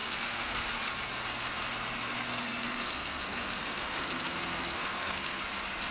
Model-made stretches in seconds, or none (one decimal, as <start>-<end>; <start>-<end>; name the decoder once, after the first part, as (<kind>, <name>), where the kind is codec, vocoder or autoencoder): 0.0-0.6 (codec, SNAC); 2.3-5.4